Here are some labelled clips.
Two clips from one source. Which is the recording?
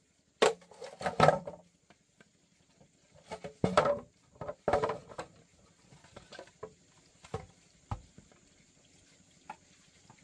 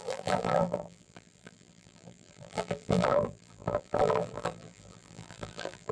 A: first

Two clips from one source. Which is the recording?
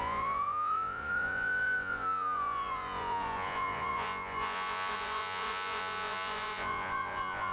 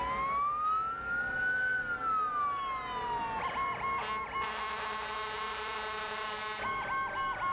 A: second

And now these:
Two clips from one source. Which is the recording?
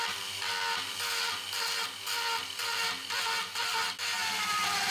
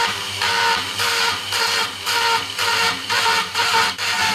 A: first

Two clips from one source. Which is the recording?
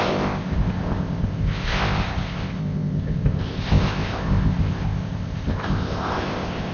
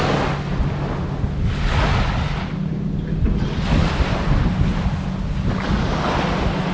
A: second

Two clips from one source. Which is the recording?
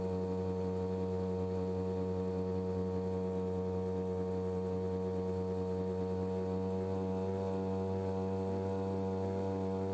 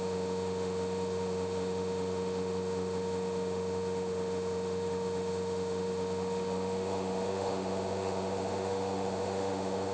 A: first